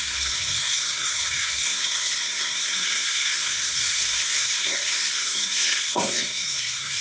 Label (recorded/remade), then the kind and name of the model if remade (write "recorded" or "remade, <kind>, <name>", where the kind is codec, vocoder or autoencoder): remade, codec, SNAC